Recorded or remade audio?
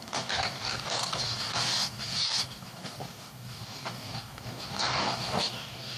remade